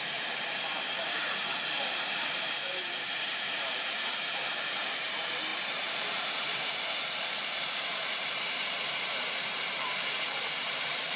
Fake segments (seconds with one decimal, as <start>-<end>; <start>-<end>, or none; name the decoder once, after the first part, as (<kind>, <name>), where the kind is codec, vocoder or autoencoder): 0.0-11.2 (vocoder, BigVGAN v2)